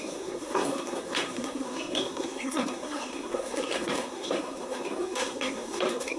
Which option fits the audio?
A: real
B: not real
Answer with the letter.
B